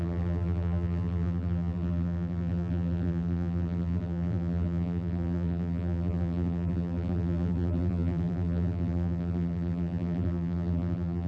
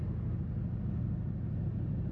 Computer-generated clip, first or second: first